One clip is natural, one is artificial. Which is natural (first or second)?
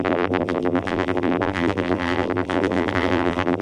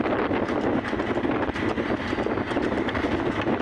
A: second